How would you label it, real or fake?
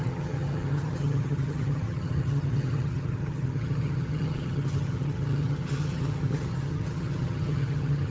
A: fake